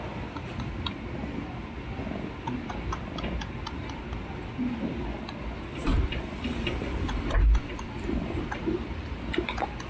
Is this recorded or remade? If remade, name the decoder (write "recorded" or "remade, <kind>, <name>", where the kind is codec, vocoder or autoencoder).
recorded